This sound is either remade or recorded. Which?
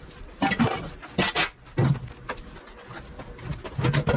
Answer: recorded